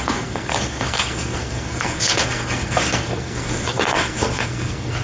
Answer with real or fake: fake